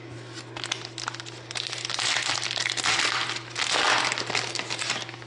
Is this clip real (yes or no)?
yes